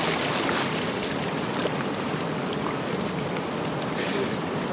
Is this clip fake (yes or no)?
yes